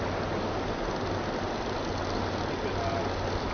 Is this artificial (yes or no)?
no